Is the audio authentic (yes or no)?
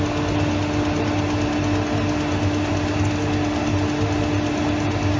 yes